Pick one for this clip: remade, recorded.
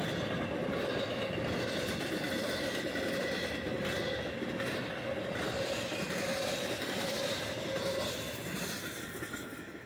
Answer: recorded